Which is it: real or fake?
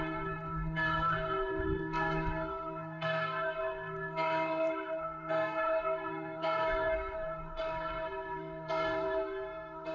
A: fake